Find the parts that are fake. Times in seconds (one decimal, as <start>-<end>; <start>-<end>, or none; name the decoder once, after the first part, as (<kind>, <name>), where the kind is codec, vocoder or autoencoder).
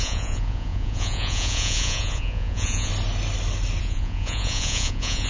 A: 0.0-2.9 (vocoder, Vocos); 3.8-5.3